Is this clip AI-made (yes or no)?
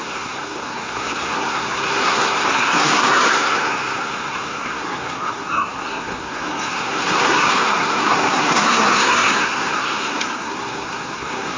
yes